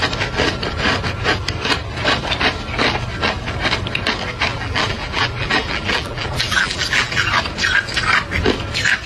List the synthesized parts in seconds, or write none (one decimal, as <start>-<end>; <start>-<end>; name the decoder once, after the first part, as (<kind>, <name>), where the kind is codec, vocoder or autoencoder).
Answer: 4.5-7.3 (vocoder, BigVGAN v2)